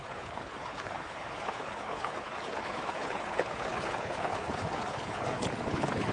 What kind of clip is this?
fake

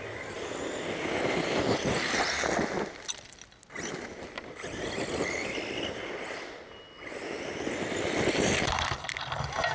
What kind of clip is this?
real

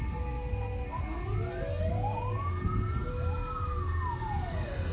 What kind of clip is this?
real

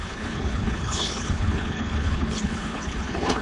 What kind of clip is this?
fake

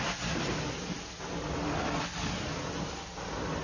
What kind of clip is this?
real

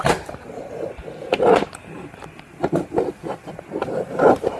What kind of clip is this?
real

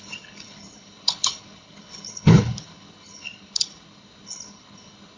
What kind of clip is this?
fake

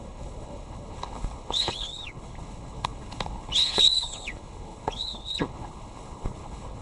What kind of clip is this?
fake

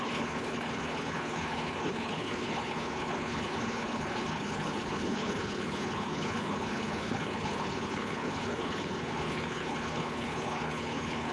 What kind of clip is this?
fake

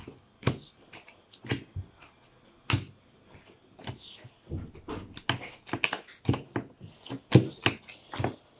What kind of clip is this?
real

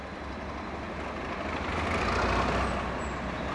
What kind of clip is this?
real